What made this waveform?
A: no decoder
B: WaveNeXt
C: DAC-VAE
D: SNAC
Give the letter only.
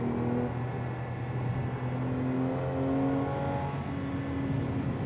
A